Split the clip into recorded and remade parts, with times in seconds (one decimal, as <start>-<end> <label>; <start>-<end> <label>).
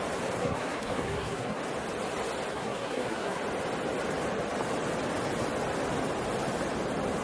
0.0-0.4 recorded; 0.4-1.6 remade; 1.6-2.5 recorded; 2.5-3.4 remade; 3.4-7.2 recorded